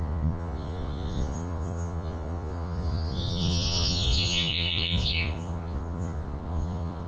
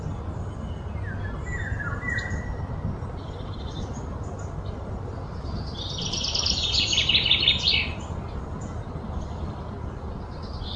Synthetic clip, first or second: first